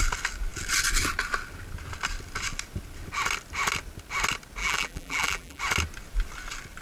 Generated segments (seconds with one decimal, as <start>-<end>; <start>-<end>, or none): 4.6-5.6